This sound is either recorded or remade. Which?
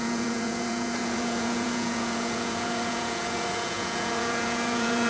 remade